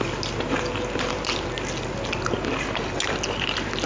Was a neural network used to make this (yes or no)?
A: no